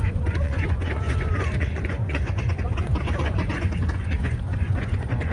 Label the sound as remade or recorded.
remade